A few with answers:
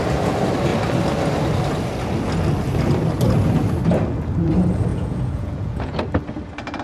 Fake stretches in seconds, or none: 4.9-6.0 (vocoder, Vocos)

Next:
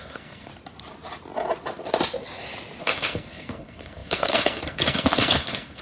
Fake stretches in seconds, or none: 0.0-0.5 (codec, SNAC); 2.8-5.8

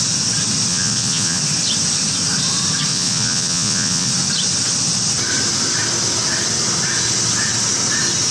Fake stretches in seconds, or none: 0.7-1.4 (vocoder, Vocos); 2.9-4.1

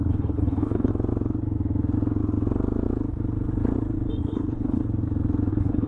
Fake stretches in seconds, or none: 0.0-0.9 (codec, HILCodec); 4.2-4.8; 5.5-5.9

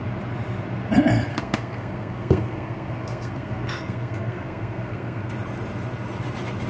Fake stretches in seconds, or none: 1.3-5.3 (codec, SNAC)

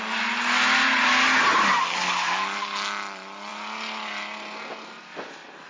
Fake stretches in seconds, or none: none

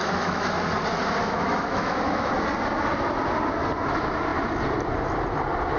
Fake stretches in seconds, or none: 0.0-0.7 (autoencoder, DAC-VAE); 1.2-2.3

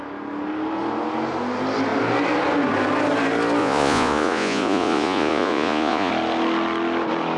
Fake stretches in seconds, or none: 3.6-6.1 (vocoder, Vocos)